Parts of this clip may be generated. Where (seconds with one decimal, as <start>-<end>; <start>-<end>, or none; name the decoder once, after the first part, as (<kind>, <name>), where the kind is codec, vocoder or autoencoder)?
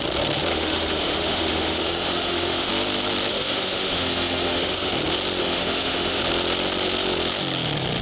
0.5-2.7 (autoencoder, DAC-VAE); 3.3-4.9; 5.4-6.2